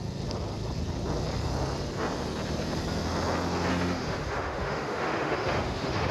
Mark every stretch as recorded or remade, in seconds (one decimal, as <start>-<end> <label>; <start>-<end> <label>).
0.0-3.7 recorded; 3.7-6.1 remade